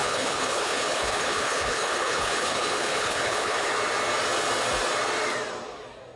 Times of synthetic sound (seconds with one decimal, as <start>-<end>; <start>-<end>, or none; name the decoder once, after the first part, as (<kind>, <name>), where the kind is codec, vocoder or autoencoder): 0.0-3.7 (codec, HILCodec)